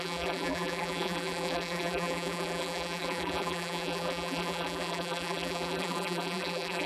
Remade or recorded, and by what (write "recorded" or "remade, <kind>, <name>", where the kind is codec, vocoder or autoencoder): remade, vocoder, BigVGAN v2